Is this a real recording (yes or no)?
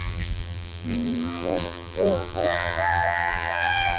no